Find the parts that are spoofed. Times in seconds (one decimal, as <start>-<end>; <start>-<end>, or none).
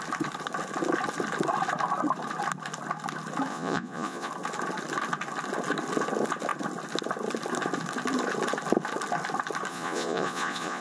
3.5-4.3; 9.7-10.8